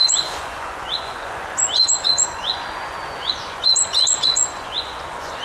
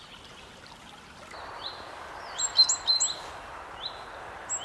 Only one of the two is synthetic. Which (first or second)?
first